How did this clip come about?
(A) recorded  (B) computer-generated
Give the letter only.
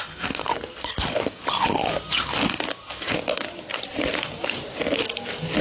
A